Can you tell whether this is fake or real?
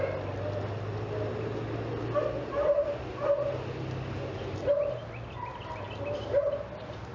real